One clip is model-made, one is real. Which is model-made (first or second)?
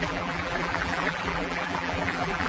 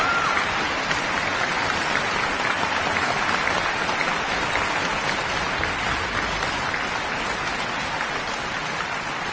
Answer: first